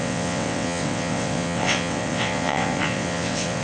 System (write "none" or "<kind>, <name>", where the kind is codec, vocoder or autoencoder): vocoder, WaveNeXt